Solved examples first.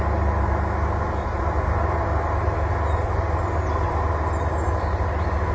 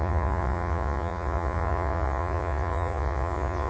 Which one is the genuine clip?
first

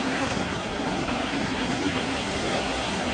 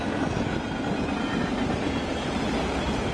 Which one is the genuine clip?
second